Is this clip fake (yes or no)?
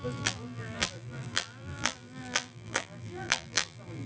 yes